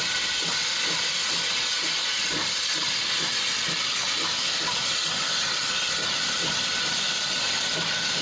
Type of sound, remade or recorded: recorded